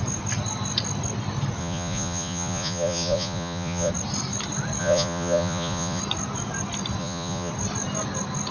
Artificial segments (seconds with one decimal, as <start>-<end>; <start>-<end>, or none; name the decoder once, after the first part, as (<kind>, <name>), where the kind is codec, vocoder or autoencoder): 1.6-3.9 (vocoder, Vocos); 4.8-6.0; 7.0-7.5